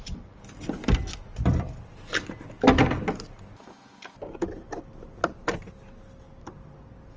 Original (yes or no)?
yes